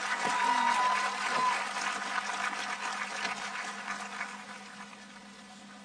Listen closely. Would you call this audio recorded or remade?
recorded